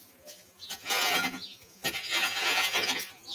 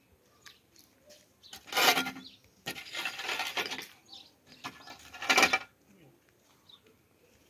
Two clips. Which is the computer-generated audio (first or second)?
first